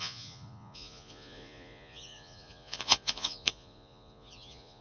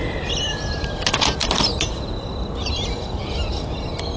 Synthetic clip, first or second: first